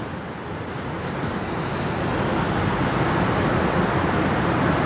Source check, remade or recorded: recorded